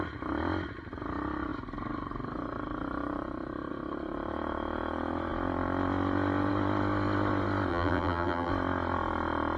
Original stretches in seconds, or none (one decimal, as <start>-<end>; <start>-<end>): 0.0-7.7; 8.5-9.6